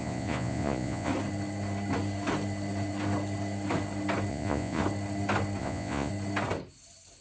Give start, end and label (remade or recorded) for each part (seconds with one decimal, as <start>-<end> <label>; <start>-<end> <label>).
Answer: 0.0-1.1 remade; 1.1-4.3 recorded; 4.3-4.8 remade; 4.8-5.6 recorded; 5.6-6.1 remade; 6.1-7.2 recorded